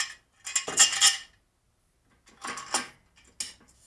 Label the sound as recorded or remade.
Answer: recorded